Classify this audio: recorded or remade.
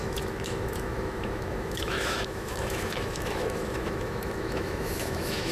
remade